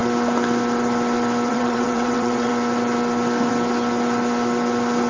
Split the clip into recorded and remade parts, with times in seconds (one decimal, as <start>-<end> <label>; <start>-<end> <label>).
0.0-1.5 recorded; 1.5-2.5 remade; 2.5-5.1 recorded